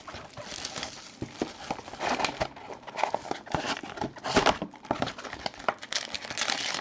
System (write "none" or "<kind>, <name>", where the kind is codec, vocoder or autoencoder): none